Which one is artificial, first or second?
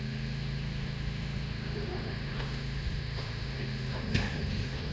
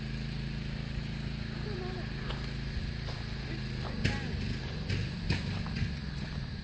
first